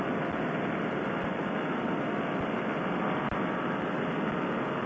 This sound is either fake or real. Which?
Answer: real